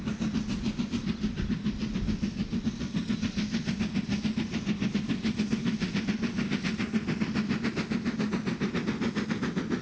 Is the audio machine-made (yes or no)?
no